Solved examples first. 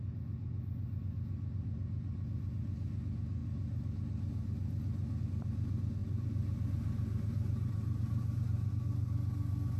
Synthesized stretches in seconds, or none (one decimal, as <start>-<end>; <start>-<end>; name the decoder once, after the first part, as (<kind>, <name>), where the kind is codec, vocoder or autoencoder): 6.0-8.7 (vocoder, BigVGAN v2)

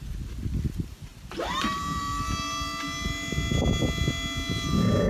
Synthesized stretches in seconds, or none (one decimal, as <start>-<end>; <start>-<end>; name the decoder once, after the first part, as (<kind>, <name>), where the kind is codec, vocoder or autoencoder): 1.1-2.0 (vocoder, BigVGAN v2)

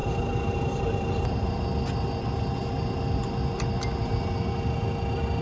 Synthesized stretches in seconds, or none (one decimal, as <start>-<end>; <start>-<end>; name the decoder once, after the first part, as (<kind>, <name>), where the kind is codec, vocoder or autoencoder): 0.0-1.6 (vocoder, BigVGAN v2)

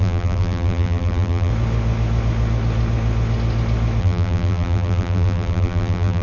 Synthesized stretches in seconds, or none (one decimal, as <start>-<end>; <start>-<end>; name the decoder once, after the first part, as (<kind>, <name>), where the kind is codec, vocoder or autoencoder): 0.0-1.5 (vocoder, BigVGAN v2); 4.0-6.2

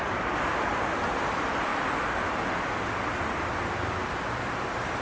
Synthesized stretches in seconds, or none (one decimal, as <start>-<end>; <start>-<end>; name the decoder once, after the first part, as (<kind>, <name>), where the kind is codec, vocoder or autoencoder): 0.0-5.0 (vocoder, BigVGAN v2)